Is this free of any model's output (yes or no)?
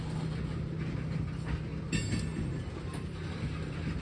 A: yes